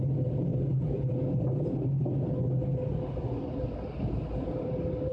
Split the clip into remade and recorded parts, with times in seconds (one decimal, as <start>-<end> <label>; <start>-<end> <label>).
0.0-5.1 recorded